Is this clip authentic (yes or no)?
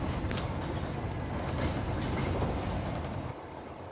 yes